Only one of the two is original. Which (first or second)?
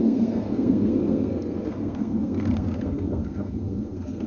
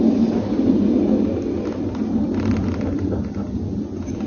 second